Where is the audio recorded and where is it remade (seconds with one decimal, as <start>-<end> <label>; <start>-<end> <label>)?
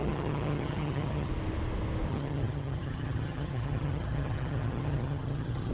0.0-1.3 remade; 1.3-2.1 recorded; 2.1-5.7 remade